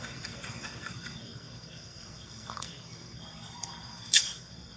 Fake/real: fake